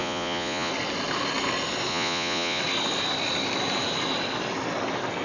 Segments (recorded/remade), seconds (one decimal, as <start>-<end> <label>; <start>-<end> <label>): 0.0-0.7 remade; 0.7-1.9 recorded; 1.9-2.6 remade; 2.6-5.2 recorded